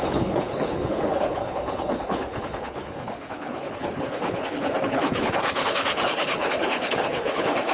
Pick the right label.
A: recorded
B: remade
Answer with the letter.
B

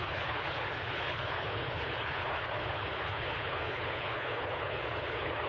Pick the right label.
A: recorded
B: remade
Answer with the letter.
B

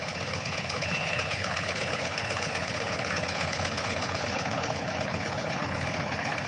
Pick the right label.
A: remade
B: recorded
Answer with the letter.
A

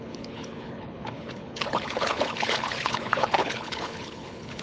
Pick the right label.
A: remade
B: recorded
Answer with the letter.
A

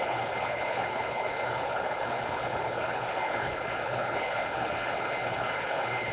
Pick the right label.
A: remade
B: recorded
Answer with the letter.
A